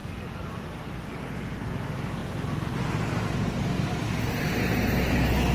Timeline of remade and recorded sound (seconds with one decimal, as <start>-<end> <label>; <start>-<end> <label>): 0.0-5.5 recorded